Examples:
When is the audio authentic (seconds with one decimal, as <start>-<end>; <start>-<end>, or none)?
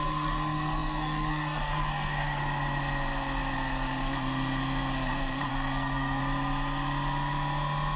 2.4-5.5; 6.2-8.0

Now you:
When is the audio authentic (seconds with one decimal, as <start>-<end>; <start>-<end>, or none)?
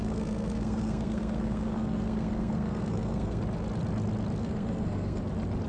3.4-4.4; 5.2-5.7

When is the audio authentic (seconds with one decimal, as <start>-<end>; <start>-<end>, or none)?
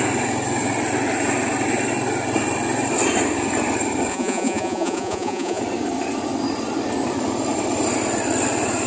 0.0-4.1; 5.6-8.9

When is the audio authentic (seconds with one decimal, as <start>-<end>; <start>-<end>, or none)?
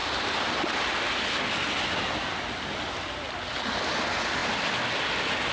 0.0-5.5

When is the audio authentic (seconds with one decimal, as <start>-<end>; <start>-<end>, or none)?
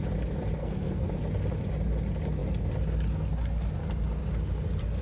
0.0-0.6; 1.1-5.0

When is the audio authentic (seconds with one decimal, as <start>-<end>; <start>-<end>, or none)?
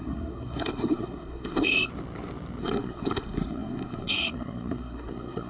1.9-2.6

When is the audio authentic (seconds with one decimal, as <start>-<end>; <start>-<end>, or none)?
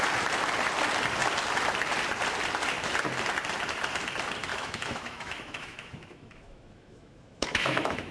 0.0-4.5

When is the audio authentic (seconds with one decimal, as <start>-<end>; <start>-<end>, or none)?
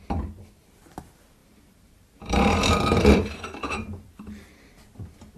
0.0-1.4; 4.6-5.4